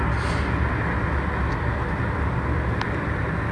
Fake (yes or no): no